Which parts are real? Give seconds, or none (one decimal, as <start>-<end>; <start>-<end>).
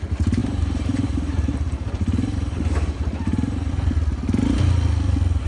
0.0-0.4; 3.7-5.5